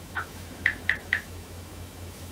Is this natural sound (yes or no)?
no